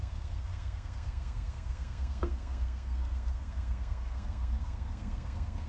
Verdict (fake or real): fake